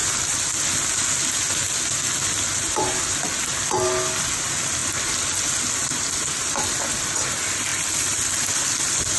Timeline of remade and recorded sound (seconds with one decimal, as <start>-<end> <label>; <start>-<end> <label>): 0.0-9.2 recorded

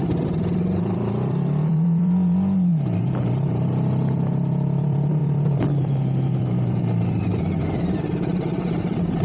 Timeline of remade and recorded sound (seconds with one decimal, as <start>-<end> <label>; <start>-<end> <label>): 0.0-2.7 remade; 2.7-3.3 recorded; 3.3-9.2 remade

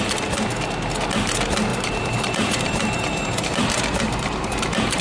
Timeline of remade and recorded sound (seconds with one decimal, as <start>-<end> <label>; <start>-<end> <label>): 0.0-1.7 recorded; 1.7-5.0 remade

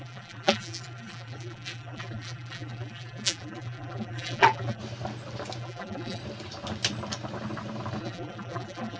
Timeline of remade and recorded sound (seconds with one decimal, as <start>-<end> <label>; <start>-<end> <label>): 0.0-4.8 remade; 4.8-5.6 recorded; 5.6-6.2 remade; 6.2-8.0 recorded; 8.0-9.0 remade

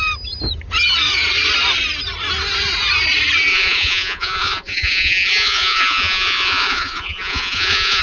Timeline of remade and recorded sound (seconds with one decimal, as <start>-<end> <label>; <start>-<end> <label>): 0.0-3.5 recorded; 3.5-8.0 remade